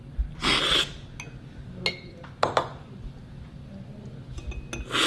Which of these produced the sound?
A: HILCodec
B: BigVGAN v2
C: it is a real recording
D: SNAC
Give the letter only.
C